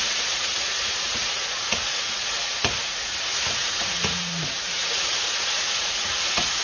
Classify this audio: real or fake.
fake